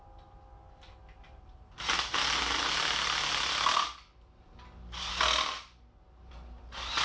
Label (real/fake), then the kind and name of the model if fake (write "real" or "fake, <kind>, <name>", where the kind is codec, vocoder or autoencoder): real